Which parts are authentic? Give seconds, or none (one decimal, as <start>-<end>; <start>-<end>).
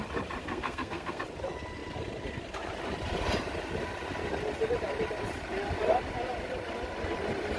0.0-0.4; 1.2-7.6